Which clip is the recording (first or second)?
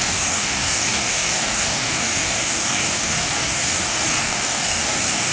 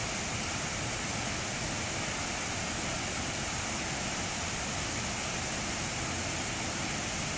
second